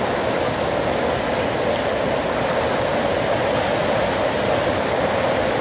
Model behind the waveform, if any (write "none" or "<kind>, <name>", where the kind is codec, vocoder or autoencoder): none